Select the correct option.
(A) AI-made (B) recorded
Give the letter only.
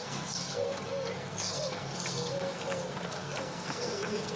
A